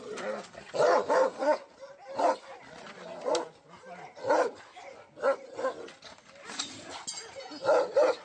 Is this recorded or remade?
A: recorded